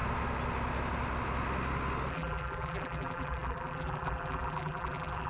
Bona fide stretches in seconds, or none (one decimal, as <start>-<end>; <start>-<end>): 0.0-2.1